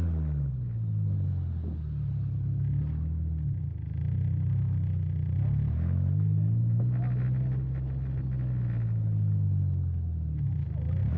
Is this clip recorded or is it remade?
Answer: recorded